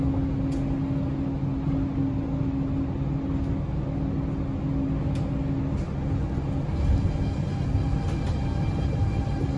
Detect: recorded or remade recorded